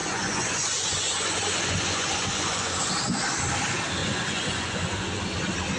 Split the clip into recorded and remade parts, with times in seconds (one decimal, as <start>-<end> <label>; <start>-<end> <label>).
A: 0.0-2.9 remade; 2.9-4.0 recorded; 4.0-5.2 remade; 5.2-5.8 recorded